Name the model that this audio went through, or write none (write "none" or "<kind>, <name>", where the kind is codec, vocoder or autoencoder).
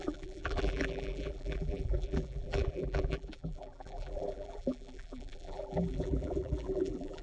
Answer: vocoder, BigVGAN v2